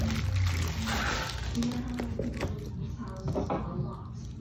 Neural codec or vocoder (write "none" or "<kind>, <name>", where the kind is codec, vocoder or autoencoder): none